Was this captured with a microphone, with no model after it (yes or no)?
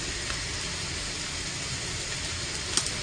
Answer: yes